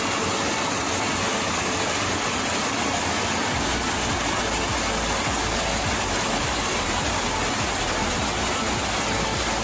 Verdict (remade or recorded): recorded